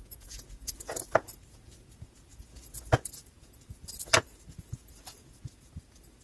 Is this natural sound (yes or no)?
no